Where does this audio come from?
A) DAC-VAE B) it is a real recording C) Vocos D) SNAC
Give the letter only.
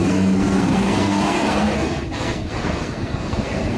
D